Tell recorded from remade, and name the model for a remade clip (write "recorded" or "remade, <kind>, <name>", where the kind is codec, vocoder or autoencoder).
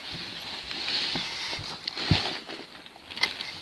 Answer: recorded